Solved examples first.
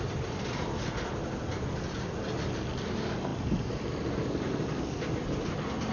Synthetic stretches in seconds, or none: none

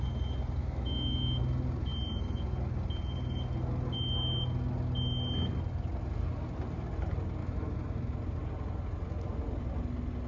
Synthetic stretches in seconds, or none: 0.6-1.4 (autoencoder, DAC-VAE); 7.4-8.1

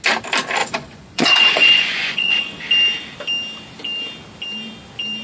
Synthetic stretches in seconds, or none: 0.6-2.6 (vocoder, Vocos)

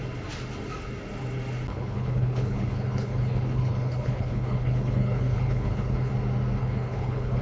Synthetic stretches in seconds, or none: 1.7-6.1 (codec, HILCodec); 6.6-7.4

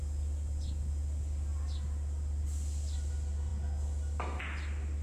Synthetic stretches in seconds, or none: none